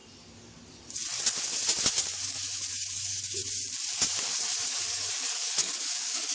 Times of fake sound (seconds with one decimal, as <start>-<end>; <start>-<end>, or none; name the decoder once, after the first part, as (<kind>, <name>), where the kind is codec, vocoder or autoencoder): 1.9-3.4 (codec, DAC); 4.6-6.3

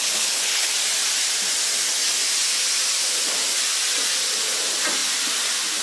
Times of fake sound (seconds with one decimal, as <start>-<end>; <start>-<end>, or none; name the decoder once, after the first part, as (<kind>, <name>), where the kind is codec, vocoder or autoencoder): 0.0-0.7 (codec, HILCodec)

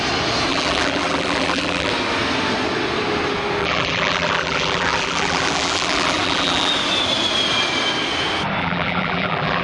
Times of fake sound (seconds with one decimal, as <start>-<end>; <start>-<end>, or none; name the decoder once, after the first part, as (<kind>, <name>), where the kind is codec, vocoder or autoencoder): 0.5-1.9 (vocoder, BigVGAN v2); 3.6-6.7; 8.6-9.6

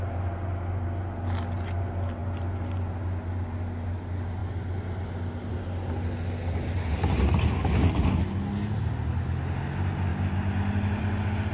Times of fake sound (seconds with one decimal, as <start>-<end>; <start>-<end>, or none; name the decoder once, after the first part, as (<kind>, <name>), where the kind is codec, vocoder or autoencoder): none

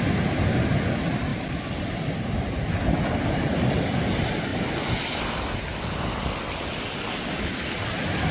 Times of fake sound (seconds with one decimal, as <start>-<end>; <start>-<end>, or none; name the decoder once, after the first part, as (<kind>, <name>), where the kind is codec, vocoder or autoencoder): none

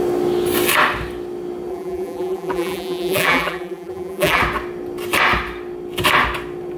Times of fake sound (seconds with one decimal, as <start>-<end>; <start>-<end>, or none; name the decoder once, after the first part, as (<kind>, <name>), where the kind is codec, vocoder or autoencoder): 1.7-4.4 (vocoder, BigVGAN v2)

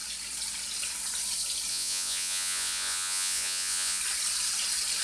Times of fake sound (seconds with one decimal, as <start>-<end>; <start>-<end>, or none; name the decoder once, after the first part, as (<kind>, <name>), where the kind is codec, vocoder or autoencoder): 1.7-4.0 (vocoder, Vocos)